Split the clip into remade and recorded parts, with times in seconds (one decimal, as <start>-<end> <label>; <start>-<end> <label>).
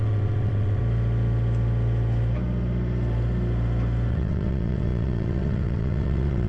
0.0-0.8 remade; 0.8-4.1 recorded; 4.1-6.5 remade